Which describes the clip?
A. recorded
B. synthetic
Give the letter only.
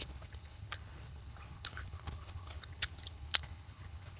B